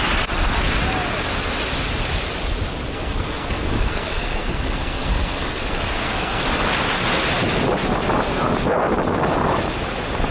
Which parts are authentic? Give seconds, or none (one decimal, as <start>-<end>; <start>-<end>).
0.0-2.9; 6.4-10.3

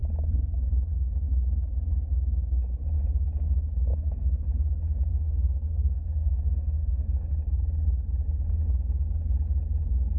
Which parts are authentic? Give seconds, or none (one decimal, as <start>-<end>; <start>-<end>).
0.0-3.9; 4.5-5.1; 7.3-10.2

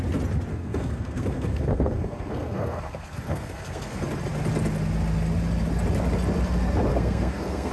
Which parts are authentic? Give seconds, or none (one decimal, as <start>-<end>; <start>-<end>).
0.0-0.5; 4.0-6.9

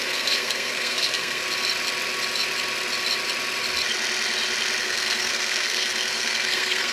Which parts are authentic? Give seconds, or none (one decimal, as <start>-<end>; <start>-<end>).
1.4-4.8

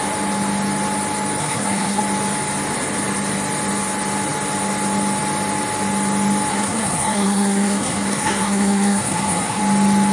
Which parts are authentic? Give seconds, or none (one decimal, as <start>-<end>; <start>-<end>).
0.0-1.4; 2.0-6.5; 9.6-10.1

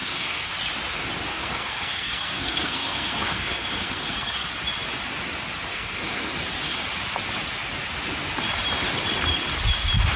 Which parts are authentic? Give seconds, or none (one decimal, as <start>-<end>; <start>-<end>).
0.5-1.3; 4.5-5.7; 6.3-10.2

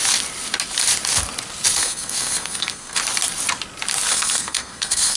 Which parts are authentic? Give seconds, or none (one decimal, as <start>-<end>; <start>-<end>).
0.0-1.8; 3.0-4.1

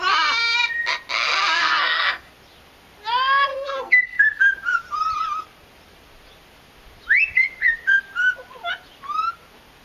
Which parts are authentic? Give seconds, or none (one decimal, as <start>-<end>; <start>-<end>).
0.0-1.6; 2.3-3.5; 4.4-9.8